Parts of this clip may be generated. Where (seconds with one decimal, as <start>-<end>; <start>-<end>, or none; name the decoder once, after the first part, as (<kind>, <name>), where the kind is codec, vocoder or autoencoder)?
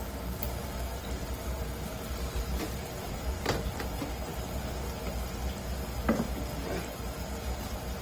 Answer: none